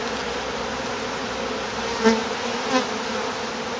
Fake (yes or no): no